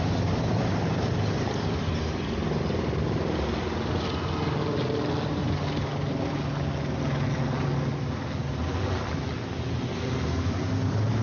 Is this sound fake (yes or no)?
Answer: no